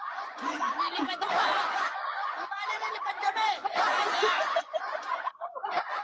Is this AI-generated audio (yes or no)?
yes